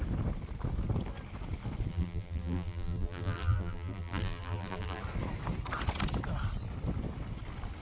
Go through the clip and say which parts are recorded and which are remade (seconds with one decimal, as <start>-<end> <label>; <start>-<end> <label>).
0.0-1.9 recorded; 1.9-5.0 remade; 5.0-7.8 recorded

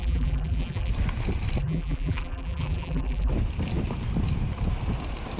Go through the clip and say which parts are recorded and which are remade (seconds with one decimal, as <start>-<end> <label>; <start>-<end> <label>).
0.0-0.9 remade; 0.9-1.6 recorded; 1.6-3.3 remade; 3.3-5.4 recorded

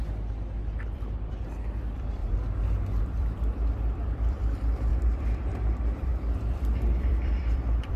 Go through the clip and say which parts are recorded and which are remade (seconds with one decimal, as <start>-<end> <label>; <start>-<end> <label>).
0.0-2.2 remade; 2.2-3.0 recorded; 3.0-8.0 remade